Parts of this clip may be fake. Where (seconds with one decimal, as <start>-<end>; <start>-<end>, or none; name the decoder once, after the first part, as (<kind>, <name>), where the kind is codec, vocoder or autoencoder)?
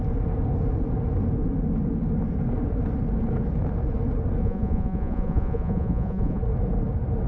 4.4-6.4 (vocoder, Vocos)